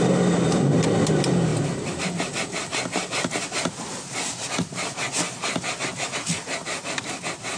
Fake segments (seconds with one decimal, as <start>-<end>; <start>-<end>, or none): none